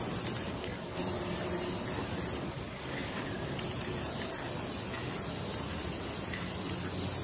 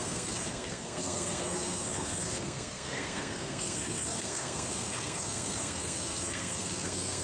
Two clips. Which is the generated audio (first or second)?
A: second